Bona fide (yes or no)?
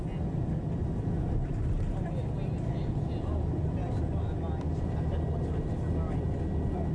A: yes